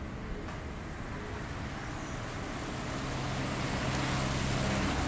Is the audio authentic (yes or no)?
yes